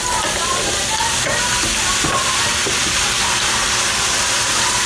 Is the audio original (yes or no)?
yes